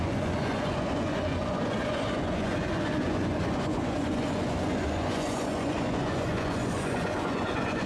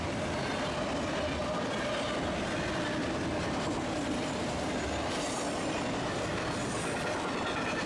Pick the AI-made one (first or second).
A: first